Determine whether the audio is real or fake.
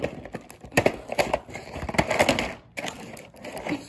real